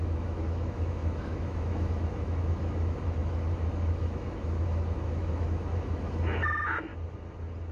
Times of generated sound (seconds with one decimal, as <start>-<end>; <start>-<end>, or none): 0.0-6.9